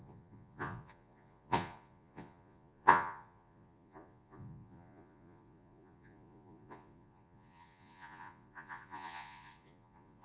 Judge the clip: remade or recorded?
remade